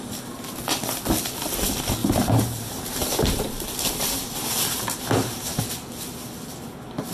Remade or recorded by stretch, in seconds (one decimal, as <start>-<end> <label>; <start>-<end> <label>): 0.0-2.0 recorded; 2.0-5.6 remade; 5.6-7.1 recorded